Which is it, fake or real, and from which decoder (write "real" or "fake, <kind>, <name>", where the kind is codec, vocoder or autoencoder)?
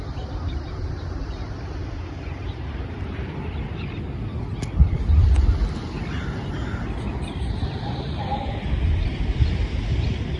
real